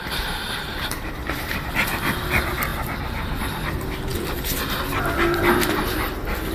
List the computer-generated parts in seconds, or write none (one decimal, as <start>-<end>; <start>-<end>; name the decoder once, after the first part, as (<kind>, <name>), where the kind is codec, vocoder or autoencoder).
none